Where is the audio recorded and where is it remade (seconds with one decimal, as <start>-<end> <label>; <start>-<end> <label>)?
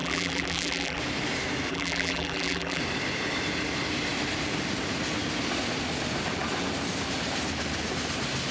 0.0-1.0 remade; 1.0-1.7 recorded; 1.7-2.8 remade; 2.8-8.5 recorded